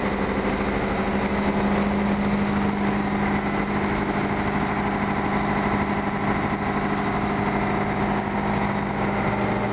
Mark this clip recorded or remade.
recorded